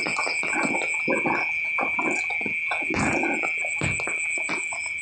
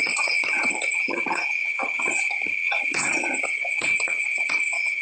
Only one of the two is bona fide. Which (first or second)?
first